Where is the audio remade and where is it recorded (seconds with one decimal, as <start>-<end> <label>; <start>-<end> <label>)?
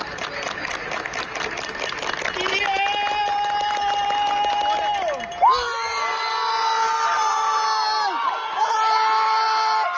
0.0-10.0 recorded